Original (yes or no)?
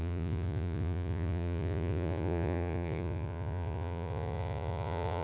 no